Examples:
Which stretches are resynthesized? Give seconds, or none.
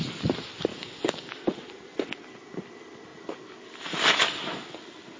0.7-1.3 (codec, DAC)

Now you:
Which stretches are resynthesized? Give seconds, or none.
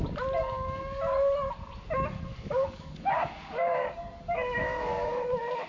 0.4-1.0 (codec, DAC); 2.3-5.3